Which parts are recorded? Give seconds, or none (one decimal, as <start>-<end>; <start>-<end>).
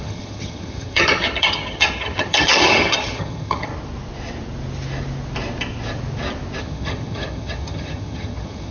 3.7-6.6